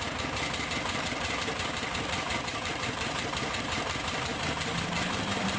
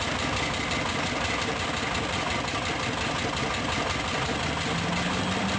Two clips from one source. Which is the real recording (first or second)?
second